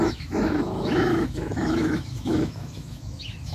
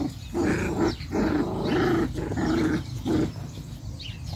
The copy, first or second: first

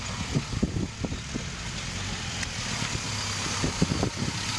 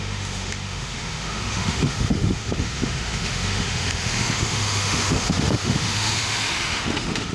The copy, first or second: second